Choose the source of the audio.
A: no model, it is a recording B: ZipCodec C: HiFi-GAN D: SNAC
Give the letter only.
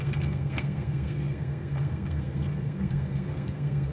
D